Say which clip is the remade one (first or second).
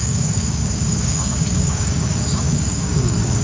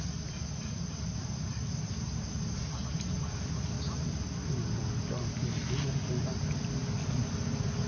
first